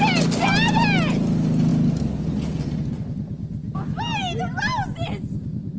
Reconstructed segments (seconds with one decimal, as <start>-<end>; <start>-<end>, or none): none